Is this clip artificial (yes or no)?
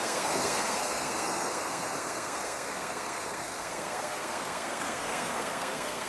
yes